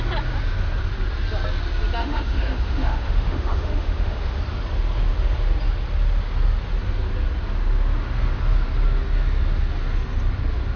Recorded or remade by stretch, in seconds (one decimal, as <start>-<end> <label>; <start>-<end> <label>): 0.0-2.0 recorded; 2.0-4.4 remade; 4.4-10.8 recorded